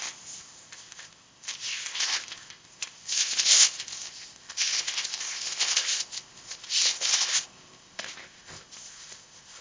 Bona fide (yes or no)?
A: no